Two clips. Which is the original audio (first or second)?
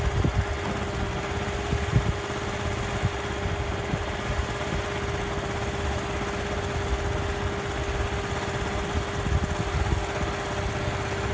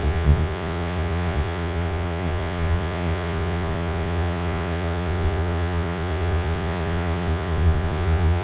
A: first